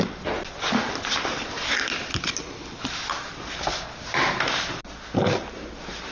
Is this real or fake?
real